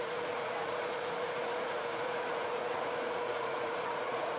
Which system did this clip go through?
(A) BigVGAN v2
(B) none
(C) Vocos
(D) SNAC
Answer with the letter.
C